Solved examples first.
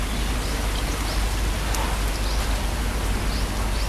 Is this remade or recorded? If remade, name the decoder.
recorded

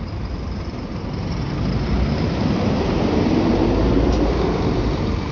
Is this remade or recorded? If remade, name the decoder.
remade, vocoder, BigVGAN v2